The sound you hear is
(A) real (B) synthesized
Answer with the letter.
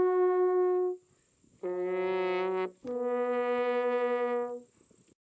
A